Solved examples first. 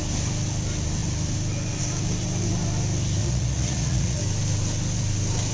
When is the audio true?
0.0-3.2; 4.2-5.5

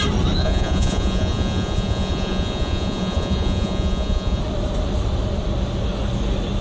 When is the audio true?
0.0-0.4; 4.4-6.6

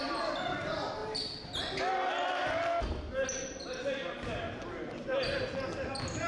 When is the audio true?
0.0-6.3

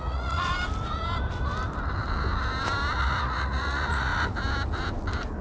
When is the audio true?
0.5-3.0; 4.1-5.4

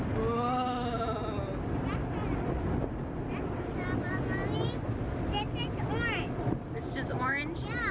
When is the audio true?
0.0-7.9

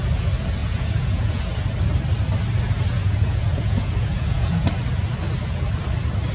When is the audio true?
0.0-0.6; 1.4-3.0; 4.7-6.3

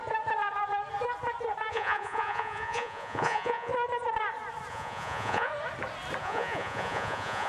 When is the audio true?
0.0-1.7; 3.7-4.7; 5.5-6.2

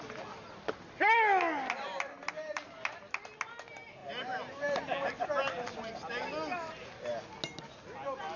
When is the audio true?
0.0-8.4